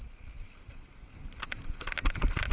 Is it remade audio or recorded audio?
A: recorded